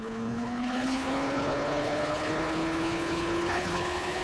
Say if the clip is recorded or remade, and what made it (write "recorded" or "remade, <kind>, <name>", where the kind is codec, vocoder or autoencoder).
remade, codec, HILCodec